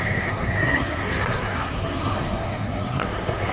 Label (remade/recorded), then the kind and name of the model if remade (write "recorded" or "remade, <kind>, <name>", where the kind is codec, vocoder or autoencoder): remade, codec, SNAC